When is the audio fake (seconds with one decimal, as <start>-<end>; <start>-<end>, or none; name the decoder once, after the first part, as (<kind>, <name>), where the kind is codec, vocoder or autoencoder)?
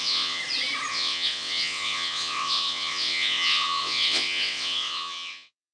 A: 0.0-0.4 (vocoder, WaveNeXt); 0.9-5.7